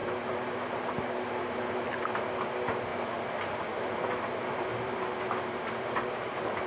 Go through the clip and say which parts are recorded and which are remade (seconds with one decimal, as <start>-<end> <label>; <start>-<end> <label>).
0.0-2.0 remade; 2.0-2.9 recorded; 2.9-3.6 remade; 3.6-4.7 recorded; 4.7-6.7 remade